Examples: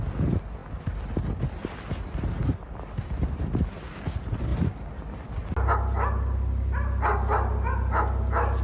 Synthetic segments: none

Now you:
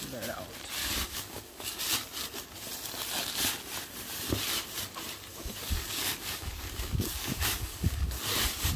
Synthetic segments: 0.8-1.8; 5.3-8.2